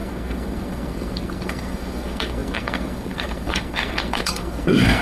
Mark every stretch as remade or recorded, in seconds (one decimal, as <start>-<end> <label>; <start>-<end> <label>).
0.0-5.0 remade

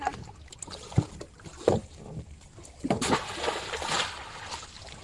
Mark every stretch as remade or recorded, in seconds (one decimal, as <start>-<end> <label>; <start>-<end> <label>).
0.0-5.0 recorded